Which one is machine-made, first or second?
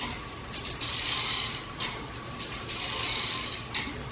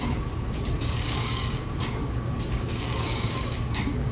second